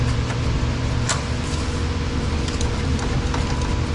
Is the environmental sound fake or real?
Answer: real